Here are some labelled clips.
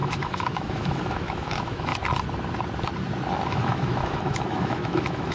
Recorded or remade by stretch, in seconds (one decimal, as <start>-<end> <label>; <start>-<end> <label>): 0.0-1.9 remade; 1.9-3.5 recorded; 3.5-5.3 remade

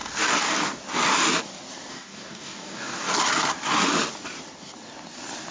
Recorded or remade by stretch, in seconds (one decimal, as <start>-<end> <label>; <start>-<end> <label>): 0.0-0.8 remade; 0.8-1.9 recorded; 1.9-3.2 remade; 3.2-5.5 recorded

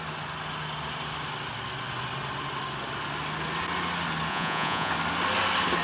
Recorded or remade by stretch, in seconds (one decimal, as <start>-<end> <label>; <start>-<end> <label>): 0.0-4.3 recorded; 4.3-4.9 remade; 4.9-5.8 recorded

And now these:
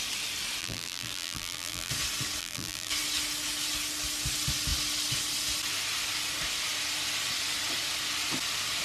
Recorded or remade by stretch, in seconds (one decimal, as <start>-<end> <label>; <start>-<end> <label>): 0.0-0.6 recorded; 0.6-1.9 remade; 1.9-2.4 recorded; 2.4-2.9 remade; 2.9-8.8 recorded

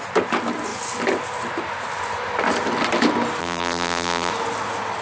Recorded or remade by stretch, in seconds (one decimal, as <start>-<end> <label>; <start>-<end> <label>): 0.0-3.4 recorded; 3.4-4.3 remade; 4.3-5.0 recorded

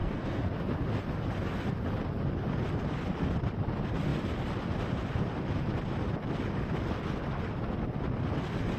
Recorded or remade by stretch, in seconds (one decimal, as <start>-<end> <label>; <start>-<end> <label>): 0.0-0.5 remade; 0.5-8.8 recorded